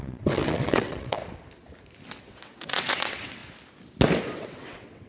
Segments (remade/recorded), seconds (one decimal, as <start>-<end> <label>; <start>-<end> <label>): 0.0-1.2 remade; 1.2-2.2 recorded; 2.2-3.4 remade; 3.4-4.4 recorded; 4.4-5.1 remade

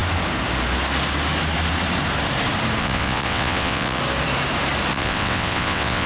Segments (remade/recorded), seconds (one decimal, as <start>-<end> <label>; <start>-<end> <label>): 0.0-2.8 recorded; 2.8-4.0 remade; 4.0-4.9 recorded; 4.9-6.1 remade

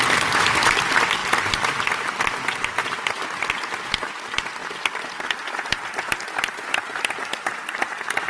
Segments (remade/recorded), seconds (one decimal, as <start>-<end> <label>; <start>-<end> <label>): 0.0-8.3 recorded

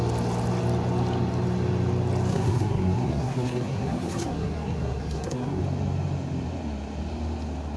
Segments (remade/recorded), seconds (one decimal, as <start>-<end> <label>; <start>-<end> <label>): 0.0-2.3 recorded; 2.3-5.6 remade; 5.6-7.8 recorded

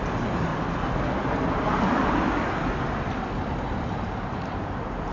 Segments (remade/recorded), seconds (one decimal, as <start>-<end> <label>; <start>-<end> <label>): 0.0-0.5 remade; 0.5-3.6 recorded; 3.6-5.1 remade

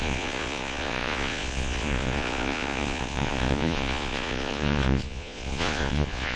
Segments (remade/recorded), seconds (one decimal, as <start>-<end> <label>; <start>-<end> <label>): 0.0-6.4 remade

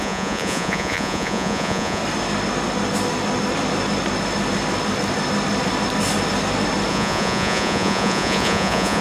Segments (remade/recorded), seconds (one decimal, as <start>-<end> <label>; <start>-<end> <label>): 0.0-2.0 remade; 2.0-6.9 recorded; 6.9-9.0 remade